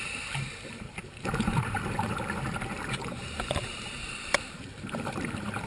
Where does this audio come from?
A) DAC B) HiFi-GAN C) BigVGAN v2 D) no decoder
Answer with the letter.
C